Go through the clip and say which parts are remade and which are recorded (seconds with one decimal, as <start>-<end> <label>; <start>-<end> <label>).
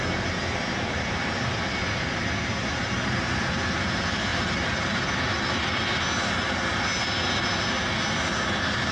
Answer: 0.0-4.3 recorded; 4.3-6.0 remade; 6.0-8.9 recorded